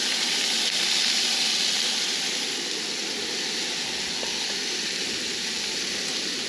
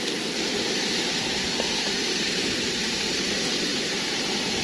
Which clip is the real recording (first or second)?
first